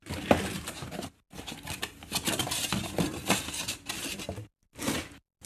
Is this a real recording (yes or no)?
yes